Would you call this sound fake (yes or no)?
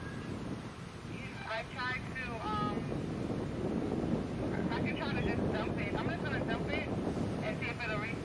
no